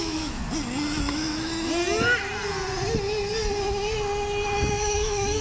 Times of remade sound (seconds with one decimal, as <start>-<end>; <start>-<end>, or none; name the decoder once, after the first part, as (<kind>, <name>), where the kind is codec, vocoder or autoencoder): 0.0-0.4 (autoencoder, DAC-VAE); 1.0-1.5; 4.7-5.4